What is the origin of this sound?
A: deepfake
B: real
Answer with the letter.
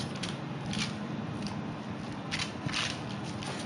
B